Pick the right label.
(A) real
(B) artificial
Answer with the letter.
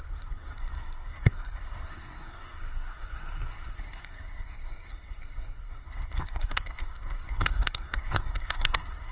B